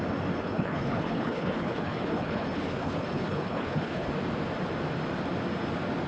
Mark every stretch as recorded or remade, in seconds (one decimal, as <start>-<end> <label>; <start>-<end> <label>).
0.0-0.4 recorded; 0.4-4.1 remade; 4.1-6.1 recorded